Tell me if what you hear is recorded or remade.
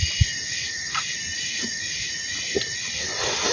recorded